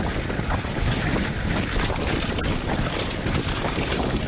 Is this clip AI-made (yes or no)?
no